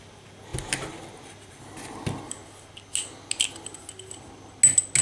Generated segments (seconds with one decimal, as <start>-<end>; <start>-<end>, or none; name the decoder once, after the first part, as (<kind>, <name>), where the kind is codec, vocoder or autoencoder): none